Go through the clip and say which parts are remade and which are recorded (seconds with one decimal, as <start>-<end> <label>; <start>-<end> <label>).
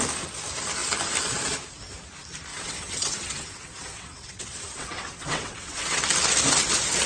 0.0-2.5 recorded; 2.5-6.0 remade; 6.0-7.1 recorded